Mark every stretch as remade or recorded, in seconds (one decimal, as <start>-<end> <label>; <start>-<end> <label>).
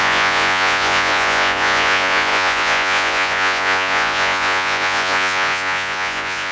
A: 0.0-6.5 remade